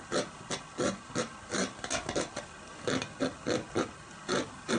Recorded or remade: recorded